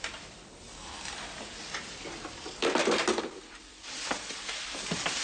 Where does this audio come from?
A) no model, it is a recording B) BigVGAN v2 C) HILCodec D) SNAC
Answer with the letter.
B